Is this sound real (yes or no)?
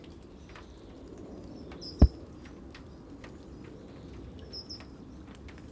yes